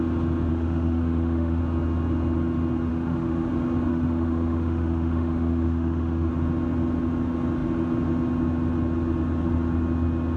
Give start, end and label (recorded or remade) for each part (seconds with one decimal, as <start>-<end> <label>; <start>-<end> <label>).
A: 0.0-0.5 recorded; 0.5-1.6 remade; 1.6-2.9 recorded; 2.9-3.5 remade; 3.5-3.9 recorded; 3.9-6.3 remade; 6.3-10.4 recorded

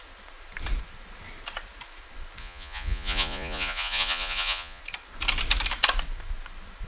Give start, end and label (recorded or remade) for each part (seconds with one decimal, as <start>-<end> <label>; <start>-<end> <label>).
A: 0.0-2.4 recorded; 2.4-4.8 remade; 4.8-6.9 recorded

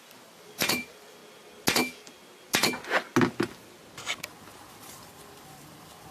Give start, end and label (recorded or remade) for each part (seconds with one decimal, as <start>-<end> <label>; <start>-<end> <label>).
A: 0.0-1.2 remade; 1.2-4.7 recorded; 4.7-6.1 remade

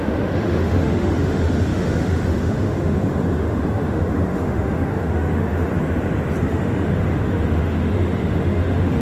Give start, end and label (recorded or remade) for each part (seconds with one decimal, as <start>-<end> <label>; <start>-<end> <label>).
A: 0.0-5.7 remade; 5.7-6.4 recorded; 6.4-9.0 remade

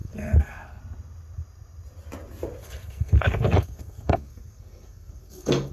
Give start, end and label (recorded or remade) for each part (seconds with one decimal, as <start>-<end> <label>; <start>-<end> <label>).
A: 0.0-0.8 remade; 0.8-2.6 recorded; 2.6-5.7 remade